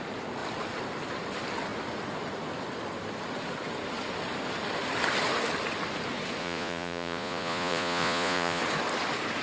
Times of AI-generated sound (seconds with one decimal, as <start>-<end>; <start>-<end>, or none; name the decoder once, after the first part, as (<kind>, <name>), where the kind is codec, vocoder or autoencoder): 6.4-8.6 (vocoder, Vocos)